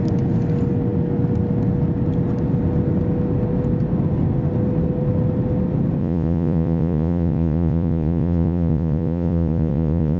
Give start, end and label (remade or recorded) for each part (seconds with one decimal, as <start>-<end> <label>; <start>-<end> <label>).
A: 0.0-6.0 recorded; 6.0-10.2 remade